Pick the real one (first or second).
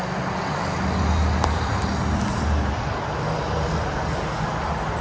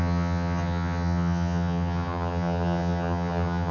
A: first